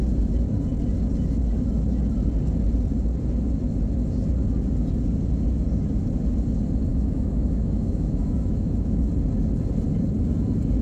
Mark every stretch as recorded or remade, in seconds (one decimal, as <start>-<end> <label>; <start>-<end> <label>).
0.0-6.9 recorded; 6.9-9.1 remade; 9.1-10.8 recorded